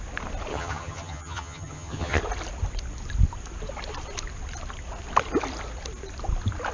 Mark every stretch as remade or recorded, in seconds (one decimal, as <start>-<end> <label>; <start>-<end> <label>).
0.0-0.5 recorded; 0.5-2.2 remade; 2.2-6.7 recorded